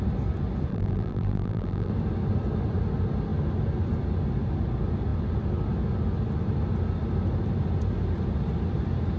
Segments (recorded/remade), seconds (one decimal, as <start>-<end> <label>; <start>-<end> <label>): 0.0-0.7 recorded; 0.7-1.9 remade; 1.9-9.2 recorded